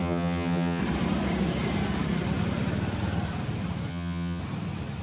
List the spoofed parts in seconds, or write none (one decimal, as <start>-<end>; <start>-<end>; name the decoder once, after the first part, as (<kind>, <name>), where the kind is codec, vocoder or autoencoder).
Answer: 0.0-0.8 (vocoder, HiFi-GAN); 3.9-4.4